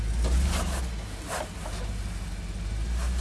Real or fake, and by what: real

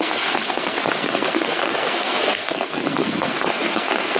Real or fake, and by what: fake, codec, SNAC